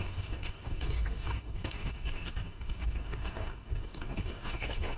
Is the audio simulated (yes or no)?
yes